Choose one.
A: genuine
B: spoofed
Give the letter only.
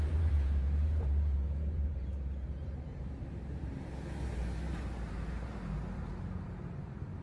B